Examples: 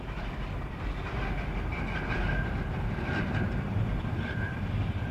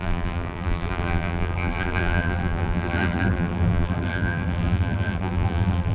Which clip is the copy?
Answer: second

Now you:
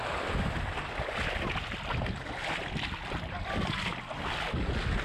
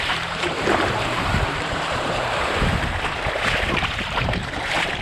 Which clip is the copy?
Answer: second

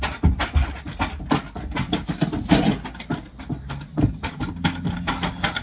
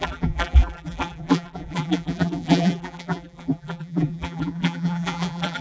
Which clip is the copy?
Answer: second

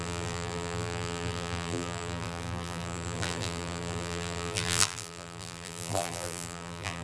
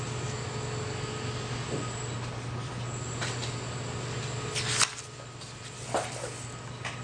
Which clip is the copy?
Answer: first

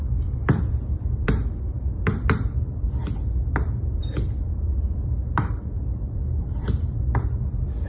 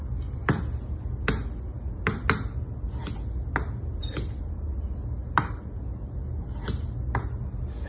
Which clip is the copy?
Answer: first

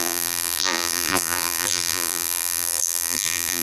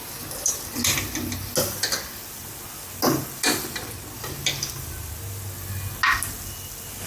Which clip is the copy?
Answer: first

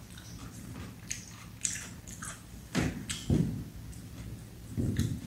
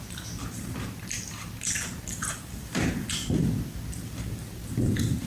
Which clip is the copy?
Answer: second